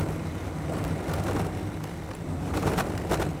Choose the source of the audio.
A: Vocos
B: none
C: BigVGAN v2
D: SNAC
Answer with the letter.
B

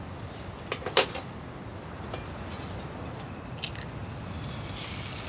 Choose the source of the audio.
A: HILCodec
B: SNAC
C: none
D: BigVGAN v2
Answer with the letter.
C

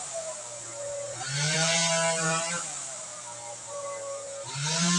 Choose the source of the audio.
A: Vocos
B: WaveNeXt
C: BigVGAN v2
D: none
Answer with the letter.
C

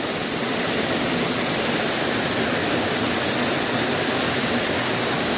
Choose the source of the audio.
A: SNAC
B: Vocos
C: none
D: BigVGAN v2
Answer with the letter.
C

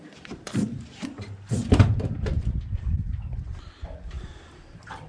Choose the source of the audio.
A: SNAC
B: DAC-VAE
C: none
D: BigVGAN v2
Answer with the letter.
D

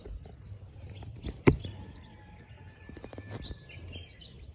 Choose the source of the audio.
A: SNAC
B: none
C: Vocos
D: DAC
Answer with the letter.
B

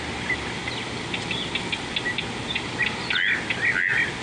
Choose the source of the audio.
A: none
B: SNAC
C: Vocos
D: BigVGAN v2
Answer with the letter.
A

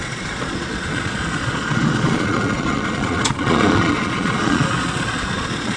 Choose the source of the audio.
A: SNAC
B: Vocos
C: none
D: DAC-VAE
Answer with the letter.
B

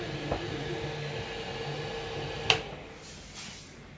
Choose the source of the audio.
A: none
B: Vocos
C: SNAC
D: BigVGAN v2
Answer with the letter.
A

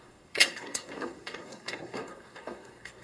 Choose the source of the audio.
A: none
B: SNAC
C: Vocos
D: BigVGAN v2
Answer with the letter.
B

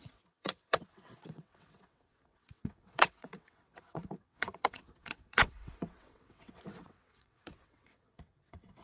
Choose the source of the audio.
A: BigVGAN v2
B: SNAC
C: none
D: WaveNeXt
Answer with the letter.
D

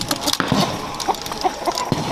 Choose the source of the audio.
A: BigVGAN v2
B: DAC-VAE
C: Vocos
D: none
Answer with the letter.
D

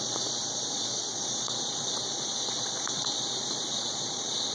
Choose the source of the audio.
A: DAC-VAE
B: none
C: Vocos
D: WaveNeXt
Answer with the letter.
C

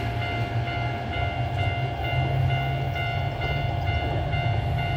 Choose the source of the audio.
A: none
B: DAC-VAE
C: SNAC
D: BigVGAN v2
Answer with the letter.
A